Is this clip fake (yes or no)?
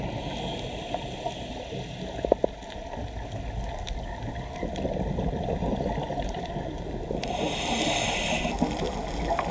no